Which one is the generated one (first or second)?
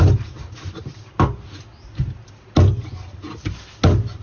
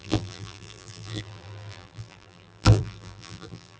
second